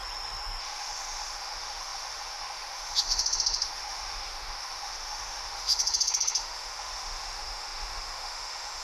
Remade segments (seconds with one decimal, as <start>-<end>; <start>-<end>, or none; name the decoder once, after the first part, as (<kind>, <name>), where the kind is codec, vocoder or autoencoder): 0.6-8.8 (autoencoder, DAC-VAE)